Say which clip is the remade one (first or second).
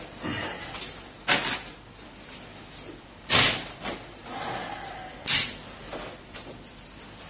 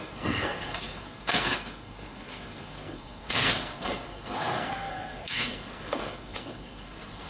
second